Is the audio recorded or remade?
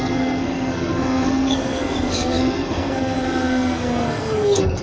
remade